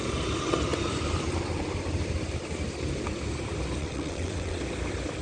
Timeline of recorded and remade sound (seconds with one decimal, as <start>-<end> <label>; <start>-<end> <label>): 0.0-3.8 recorded; 3.8-4.6 remade; 4.6-5.2 recorded

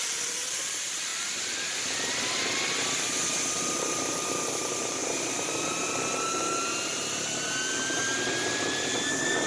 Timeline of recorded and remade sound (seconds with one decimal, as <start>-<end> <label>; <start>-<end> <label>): 0.0-1.1 recorded; 1.1-2.1 remade; 2.1-9.5 recorded

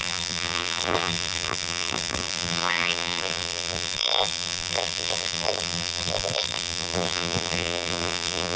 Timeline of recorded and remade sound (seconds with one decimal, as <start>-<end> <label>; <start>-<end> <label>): 0.0-8.6 remade